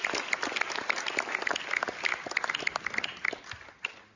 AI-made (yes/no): no